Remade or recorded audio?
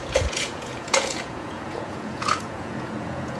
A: remade